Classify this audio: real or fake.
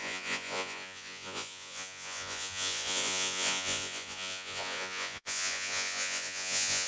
fake